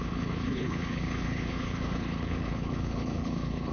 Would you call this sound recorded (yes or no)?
no